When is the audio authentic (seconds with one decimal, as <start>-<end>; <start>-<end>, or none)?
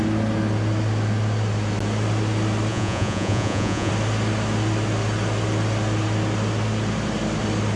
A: 0.0-2.7; 3.9-7.8